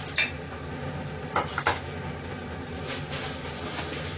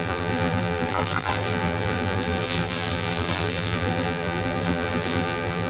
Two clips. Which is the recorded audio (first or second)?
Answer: first